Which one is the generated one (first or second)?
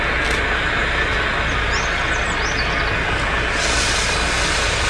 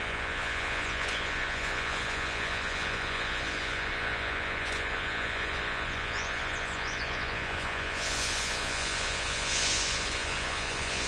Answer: second